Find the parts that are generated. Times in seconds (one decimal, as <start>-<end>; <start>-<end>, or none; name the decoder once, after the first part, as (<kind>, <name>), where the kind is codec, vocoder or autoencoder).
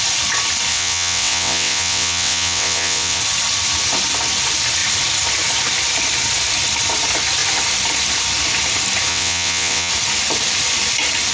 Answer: 0.7-3.2 (vocoder, WaveNeXt); 9.1-9.9